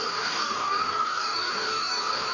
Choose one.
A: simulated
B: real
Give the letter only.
A